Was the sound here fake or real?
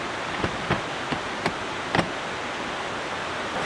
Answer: real